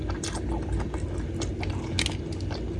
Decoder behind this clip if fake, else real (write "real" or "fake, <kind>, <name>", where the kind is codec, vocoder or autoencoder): real